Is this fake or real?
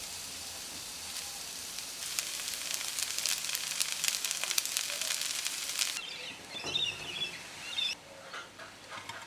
fake